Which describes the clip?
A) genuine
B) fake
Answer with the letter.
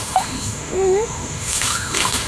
B